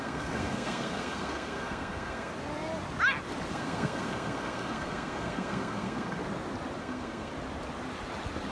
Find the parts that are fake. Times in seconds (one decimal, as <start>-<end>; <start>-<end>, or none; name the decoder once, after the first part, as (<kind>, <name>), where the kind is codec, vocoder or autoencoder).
0.0-2.3 (codec, SNAC); 3.5-6.2; 6.8-7.3